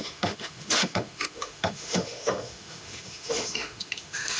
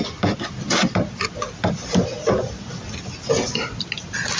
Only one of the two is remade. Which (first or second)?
first